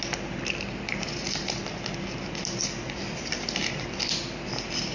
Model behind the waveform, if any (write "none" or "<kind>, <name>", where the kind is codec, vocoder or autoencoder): none